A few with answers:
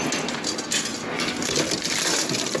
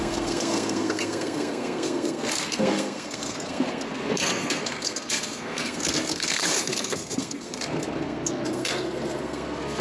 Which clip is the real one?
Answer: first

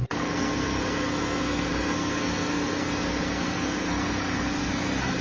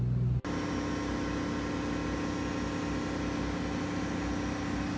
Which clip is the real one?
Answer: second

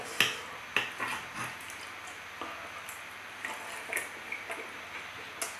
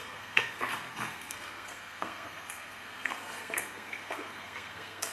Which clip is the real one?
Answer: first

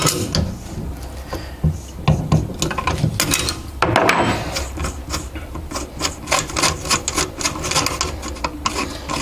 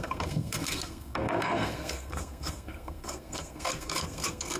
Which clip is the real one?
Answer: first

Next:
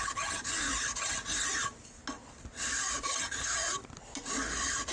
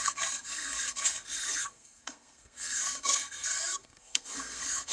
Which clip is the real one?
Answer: first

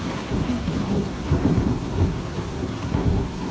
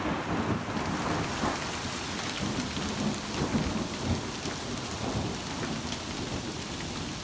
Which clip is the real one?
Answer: second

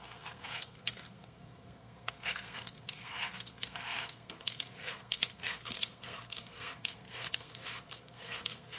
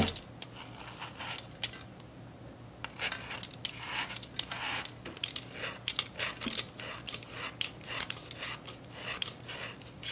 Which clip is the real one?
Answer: second